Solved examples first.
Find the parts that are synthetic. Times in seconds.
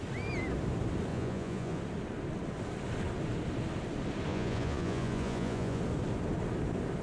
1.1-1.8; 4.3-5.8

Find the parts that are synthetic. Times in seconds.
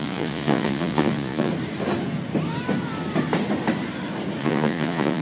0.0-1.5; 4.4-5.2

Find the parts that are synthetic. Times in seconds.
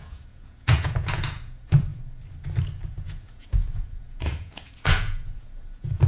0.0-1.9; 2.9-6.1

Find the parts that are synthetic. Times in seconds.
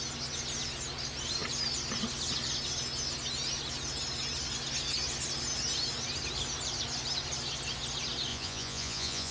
8.3-9.3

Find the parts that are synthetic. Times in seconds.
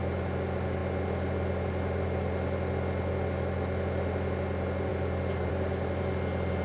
none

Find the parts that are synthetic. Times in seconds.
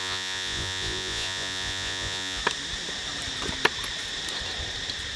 0.0-2.4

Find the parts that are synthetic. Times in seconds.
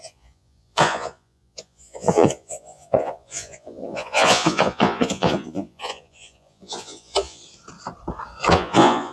0.0-7.4; 8.5-9.1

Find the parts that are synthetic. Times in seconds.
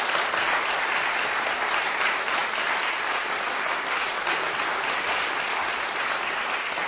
none